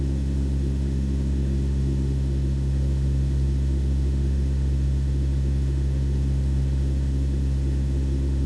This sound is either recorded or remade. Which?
remade